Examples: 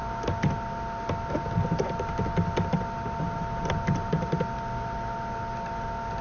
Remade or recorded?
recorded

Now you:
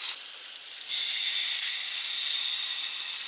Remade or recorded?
recorded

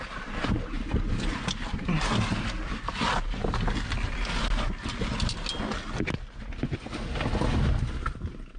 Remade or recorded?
recorded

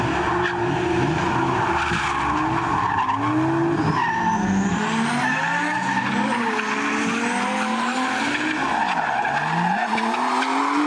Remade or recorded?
recorded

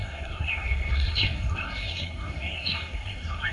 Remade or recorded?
remade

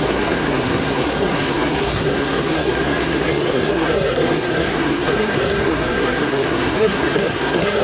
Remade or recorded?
remade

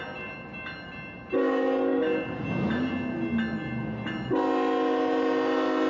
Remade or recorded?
recorded